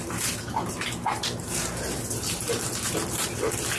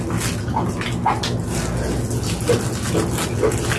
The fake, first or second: first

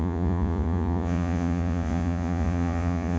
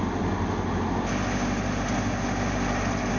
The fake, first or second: first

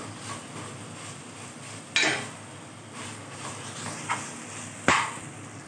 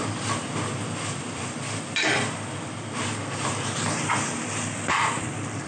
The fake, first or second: second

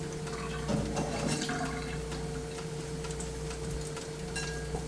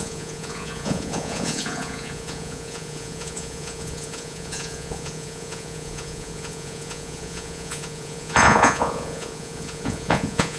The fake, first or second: second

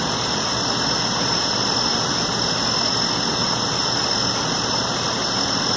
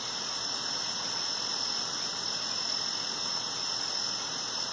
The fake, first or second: first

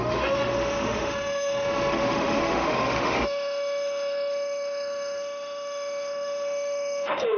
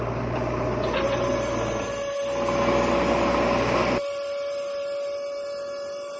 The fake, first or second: first